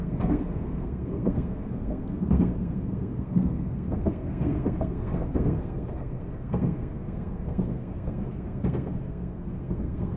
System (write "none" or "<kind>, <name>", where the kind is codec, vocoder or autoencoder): codec, SNAC